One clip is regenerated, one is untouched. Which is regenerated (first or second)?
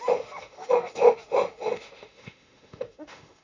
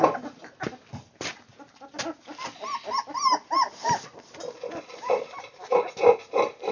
first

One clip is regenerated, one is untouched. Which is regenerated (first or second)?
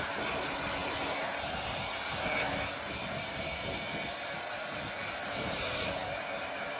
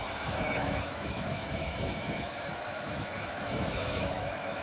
second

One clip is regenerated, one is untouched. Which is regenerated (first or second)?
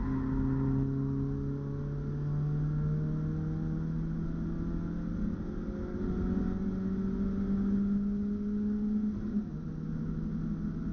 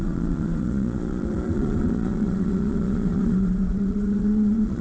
second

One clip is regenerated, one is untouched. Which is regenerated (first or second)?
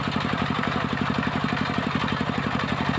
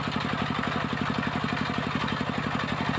first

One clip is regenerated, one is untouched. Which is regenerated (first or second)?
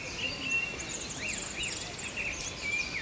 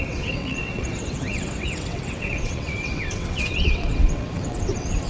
second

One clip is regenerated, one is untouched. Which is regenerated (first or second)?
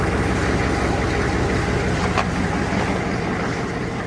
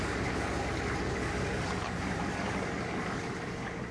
second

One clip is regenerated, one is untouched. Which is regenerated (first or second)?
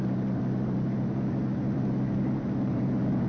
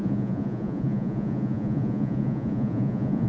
second